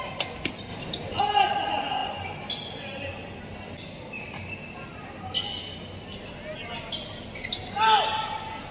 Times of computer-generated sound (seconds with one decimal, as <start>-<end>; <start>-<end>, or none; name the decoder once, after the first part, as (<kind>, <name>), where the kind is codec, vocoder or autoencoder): none